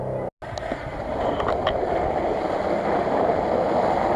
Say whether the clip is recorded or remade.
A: recorded